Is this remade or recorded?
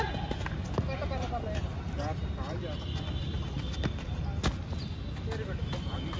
recorded